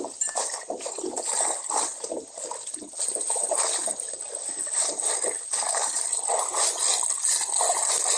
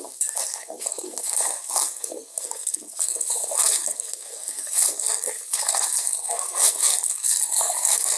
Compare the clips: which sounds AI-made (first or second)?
second